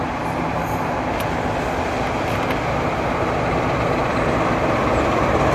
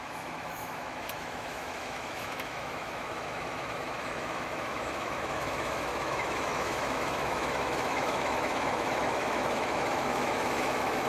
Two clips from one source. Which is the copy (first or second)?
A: second